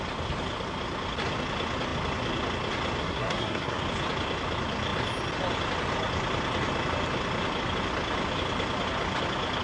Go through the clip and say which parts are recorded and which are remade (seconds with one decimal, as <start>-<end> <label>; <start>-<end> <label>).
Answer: 0.0-3.0 recorded; 3.0-3.8 remade; 3.8-9.6 recorded